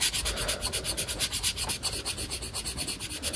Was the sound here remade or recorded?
recorded